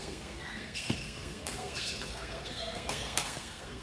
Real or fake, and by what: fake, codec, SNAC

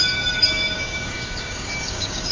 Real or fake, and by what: fake, codec, DAC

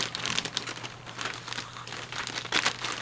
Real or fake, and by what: real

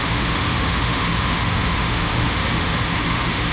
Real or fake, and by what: fake, autoencoder, DAC-VAE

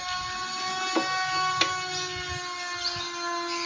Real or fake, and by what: real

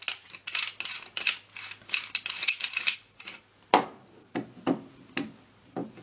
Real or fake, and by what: real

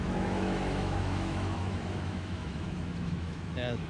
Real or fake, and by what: fake, autoencoder, DAC-VAE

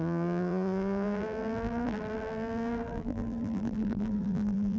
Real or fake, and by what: fake, vocoder, BigVGAN v2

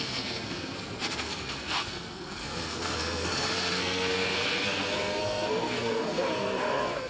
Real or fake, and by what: fake, codec, SNAC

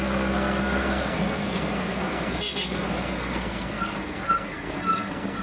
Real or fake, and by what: fake, codec, SNAC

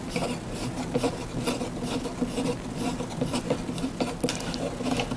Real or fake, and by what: real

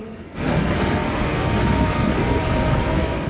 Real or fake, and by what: fake, codec, SNAC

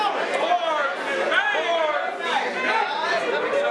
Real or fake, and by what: real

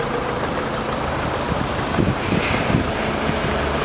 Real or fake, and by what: fake, vocoder, BigVGAN v2